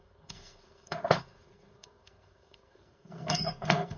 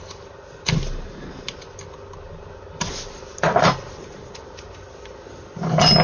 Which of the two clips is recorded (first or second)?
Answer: second